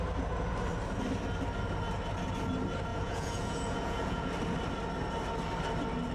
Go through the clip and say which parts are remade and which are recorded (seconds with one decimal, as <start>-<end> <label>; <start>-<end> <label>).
0.0-2.9 recorded; 2.9-4.3 remade; 4.3-6.1 recorded